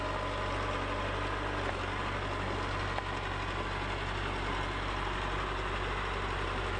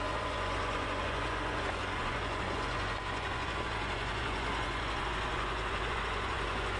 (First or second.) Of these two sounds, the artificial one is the second